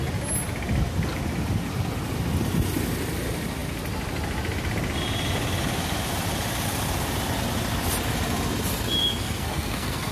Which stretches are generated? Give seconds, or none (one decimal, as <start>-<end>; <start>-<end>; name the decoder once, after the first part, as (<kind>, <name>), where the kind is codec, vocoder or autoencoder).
9.0-10.1 (codec, SNAC)